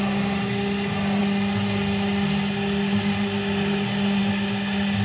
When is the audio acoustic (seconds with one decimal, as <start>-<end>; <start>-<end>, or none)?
0.0-5.0